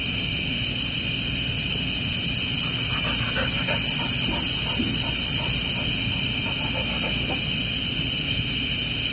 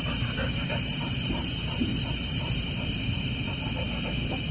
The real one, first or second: first